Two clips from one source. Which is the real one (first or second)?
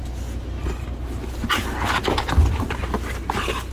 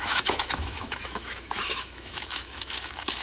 first